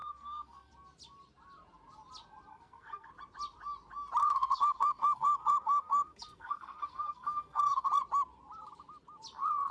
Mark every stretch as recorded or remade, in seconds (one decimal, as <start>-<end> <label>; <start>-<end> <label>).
0.0-0.7 remade; 0.7-2.5 recorded; 2.5-3.1 remade; 3.1-4.2 recorded; 4.2-7.9 remade; 7.9-9.7 recorded